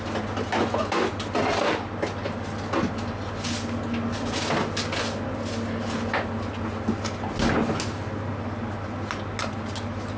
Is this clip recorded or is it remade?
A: recorded